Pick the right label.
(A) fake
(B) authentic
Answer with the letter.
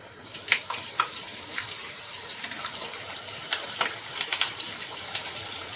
A